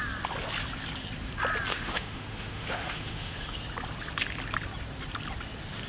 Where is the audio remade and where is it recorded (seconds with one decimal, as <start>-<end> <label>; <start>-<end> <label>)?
0.0-1.7 recorded; 1.7-3.6 remade; 3.6-5.9 recorded